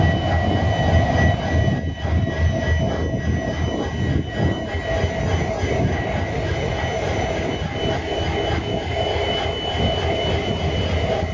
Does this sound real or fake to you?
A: real